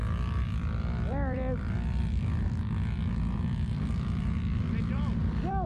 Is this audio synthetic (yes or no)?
yes